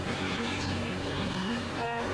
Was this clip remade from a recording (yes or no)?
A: yes